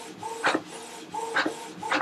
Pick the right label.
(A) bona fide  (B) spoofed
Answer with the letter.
A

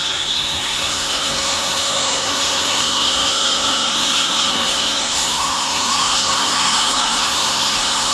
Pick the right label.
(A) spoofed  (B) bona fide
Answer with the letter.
A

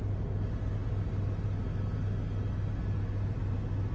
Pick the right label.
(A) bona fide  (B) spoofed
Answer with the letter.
A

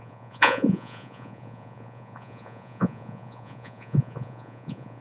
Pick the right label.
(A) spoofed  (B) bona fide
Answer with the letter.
A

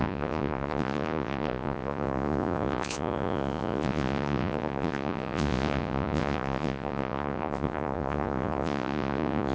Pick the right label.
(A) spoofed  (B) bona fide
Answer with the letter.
A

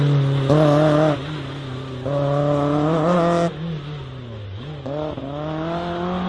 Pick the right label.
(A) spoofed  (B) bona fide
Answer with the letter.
B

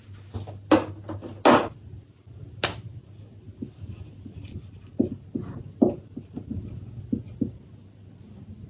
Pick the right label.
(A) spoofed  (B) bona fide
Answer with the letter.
B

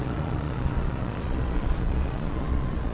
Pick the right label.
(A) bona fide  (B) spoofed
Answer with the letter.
B